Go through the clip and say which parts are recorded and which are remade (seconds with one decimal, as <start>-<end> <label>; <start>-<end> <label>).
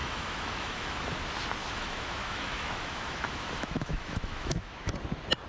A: 0.0-1.1 remade; 1.1-1.6 recorded; 1.6-4.9 remade; 4.9-5.5 recorded